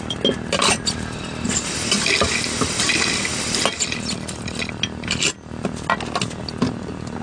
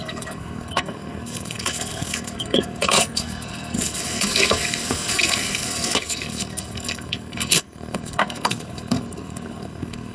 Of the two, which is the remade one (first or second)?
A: second